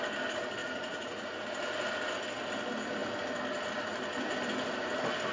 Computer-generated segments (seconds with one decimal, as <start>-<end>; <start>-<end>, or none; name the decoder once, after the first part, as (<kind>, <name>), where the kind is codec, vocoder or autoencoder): 0.6-1.3 (vocoder, Vocos)